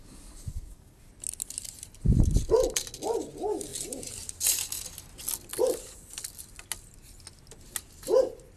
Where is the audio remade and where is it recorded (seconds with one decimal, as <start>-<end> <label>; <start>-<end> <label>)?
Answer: 0.0-1.1 remade; 1.1-8.6 recorded

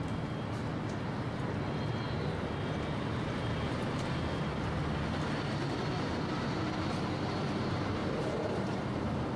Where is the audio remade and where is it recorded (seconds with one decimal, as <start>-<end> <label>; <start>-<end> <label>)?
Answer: 0.0-8.0 recorded; 8.0-8.8 remade; 8.8-9.4 recorded

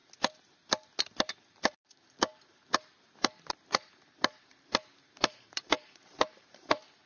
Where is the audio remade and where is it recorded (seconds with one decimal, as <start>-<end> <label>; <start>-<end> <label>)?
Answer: 0.0-1.4 recorded; 1.4-2.3 remade; 2.3-3.5 recorded; 3.5-7.1 remade

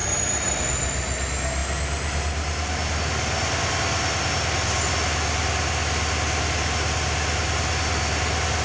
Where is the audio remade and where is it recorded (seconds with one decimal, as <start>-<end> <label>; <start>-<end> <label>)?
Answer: 0.0-0.6 remade; 0.6-8.6 recorded

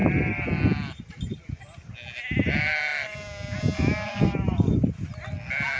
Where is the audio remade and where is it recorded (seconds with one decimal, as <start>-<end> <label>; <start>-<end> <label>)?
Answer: 0.0-5.8 recorded

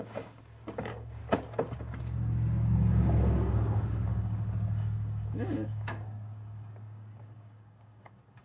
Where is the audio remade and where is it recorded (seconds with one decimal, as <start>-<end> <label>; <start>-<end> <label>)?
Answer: 0.0-1.2 remade; 1.2-2.0 recorded; 2.0-8.4 remade

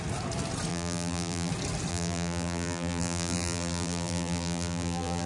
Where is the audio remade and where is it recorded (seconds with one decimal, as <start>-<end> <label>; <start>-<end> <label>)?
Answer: 0.0-0.7 recorded; 0.7-1.5 remade; 1.5-1.9 recorded; 1.9-5.3 remade

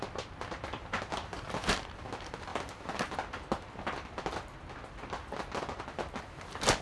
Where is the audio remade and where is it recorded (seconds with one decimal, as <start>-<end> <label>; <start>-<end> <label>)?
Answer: 0.0-6.8 recorded